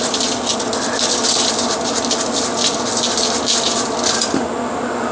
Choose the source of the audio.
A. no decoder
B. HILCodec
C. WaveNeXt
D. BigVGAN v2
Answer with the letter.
A